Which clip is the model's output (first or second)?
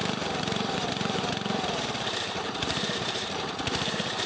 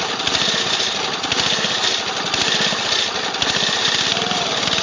first